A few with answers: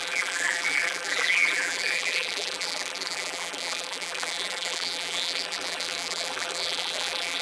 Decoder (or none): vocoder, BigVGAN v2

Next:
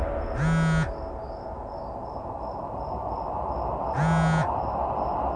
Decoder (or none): none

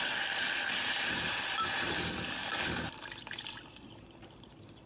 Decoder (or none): vocoder, BigVGAN v2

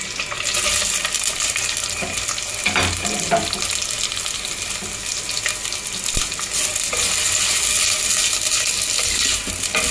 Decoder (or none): none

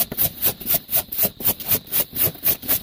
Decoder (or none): vocoder, BigVGAN v2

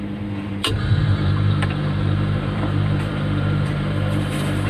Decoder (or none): vocoder, BigVGAN v2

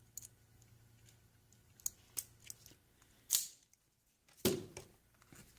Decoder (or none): none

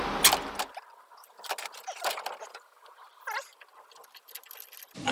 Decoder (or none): none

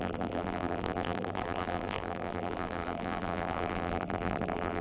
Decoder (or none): vocoder, BigVGAN v2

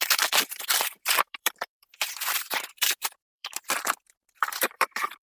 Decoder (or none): vocoder, BigVGAN v2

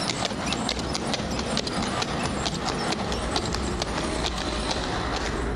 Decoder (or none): none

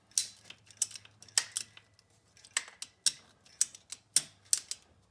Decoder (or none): none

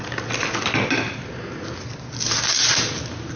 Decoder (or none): none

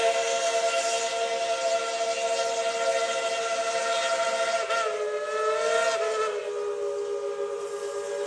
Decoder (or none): none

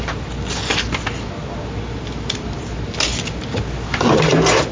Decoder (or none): none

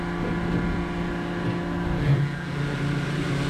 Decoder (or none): none